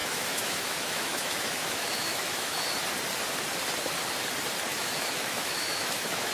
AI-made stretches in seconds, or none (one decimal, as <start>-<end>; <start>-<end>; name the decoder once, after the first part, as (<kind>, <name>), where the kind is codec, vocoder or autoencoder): 0.0-2.6 (autoencoder, DAC-VAE); 4.7-6.3